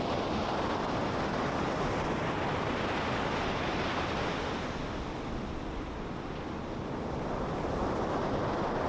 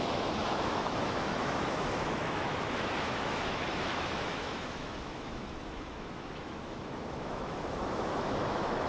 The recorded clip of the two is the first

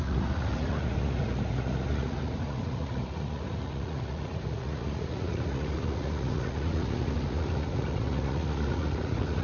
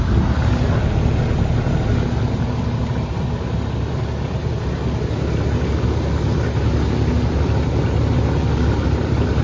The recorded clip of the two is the second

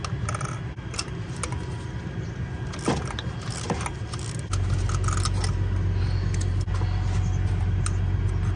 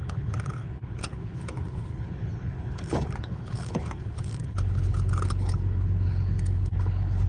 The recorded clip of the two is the first